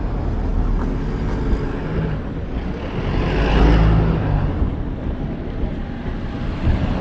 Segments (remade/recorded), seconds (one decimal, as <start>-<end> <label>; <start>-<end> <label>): 0.0-7.0 recorded